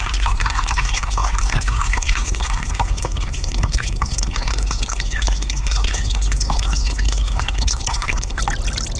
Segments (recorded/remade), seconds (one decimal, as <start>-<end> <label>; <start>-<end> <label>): 0.0-8.4 remade; 8.4-9.0 recorded